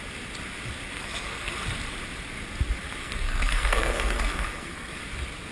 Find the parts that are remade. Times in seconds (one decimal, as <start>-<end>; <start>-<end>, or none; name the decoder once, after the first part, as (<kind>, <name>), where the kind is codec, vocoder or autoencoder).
0.9-1.5 (codec, SNAC); 3.0-5.0